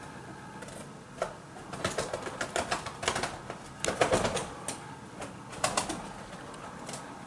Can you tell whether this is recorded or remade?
recorded